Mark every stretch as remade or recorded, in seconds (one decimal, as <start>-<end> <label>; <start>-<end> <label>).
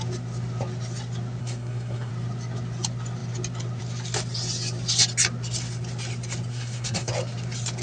0.0-1.4 recorded; 1.4-2.1 remade; 2.1-6.5 recorded; 6.5-7.1 remade; 7.1-7.8 recorded